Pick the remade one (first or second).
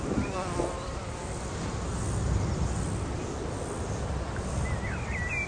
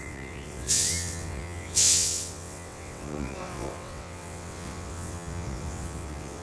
second